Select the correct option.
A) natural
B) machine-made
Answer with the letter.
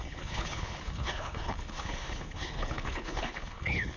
B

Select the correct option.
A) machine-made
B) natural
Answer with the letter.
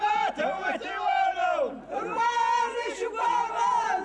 B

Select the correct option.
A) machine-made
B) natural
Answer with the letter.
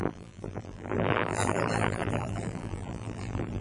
A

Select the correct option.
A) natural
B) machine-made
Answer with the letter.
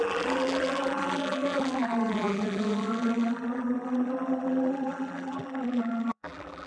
B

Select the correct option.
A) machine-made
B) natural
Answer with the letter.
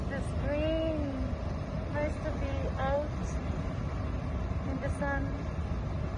B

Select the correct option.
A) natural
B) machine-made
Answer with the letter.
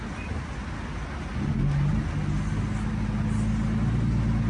A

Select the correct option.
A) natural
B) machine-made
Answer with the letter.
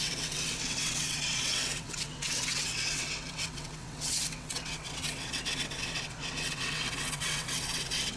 B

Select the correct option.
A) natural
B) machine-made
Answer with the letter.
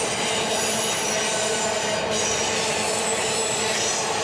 A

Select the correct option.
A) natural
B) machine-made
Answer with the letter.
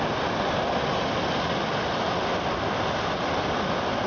A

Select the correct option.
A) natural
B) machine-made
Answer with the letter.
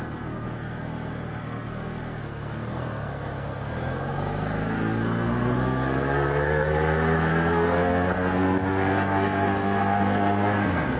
B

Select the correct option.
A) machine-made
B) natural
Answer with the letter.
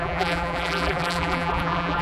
A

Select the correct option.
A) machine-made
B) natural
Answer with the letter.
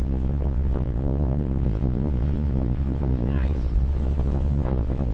A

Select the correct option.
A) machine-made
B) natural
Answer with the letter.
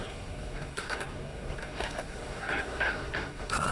A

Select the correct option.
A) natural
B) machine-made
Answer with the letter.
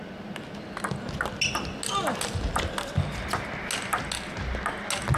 A